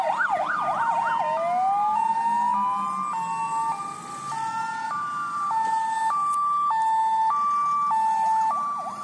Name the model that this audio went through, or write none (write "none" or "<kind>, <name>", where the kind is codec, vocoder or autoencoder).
none